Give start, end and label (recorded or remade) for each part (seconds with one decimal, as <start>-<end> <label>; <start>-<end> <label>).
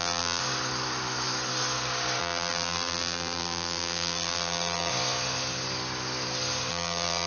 0.0-0.4 remade; 0.4-2.2 recorded; 2.2-4.9 remade; 4.9-6.7 recorded; 6.7-7.3 remade